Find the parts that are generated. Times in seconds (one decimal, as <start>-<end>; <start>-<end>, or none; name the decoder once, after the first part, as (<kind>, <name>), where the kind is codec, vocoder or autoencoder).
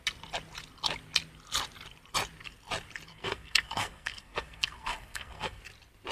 3.1-5.6 (codec, SNAC)